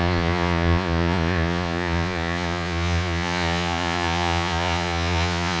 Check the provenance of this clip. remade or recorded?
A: remade